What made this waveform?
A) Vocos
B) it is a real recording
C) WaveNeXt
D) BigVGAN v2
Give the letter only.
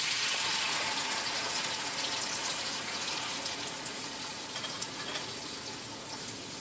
A